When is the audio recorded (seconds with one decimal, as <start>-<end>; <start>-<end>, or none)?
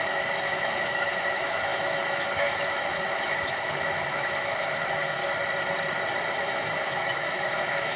5.2-6.3